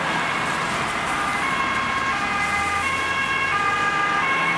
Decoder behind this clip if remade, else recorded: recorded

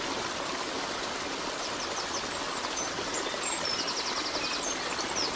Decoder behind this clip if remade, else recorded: recorded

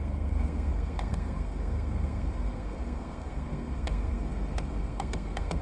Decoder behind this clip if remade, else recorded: remade, codec, SNAC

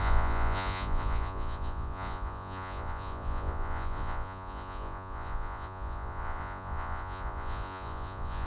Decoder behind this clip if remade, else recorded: remade, vocoder, Vocos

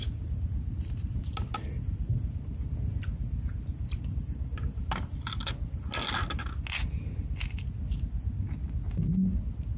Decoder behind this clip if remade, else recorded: recorded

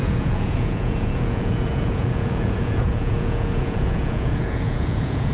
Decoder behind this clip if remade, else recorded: remade, vocoder, Vocos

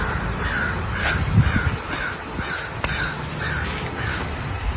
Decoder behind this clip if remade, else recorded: recorded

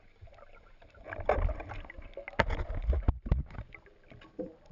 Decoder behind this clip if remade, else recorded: recorded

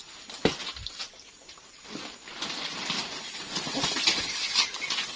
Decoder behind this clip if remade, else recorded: recorded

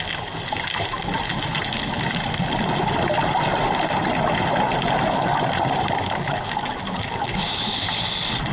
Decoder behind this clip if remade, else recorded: recorded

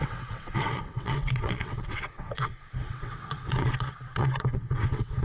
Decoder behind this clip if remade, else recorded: remade, vocoder, WaveNeXt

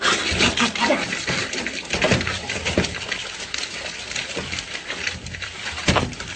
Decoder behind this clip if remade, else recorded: remade, vocoder, BigVGAN v2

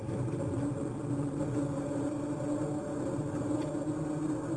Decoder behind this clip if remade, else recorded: recorded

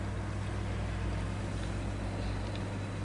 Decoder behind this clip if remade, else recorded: recorded